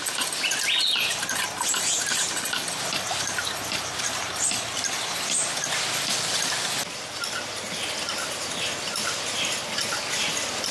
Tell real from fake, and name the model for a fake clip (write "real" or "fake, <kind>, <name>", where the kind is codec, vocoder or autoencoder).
real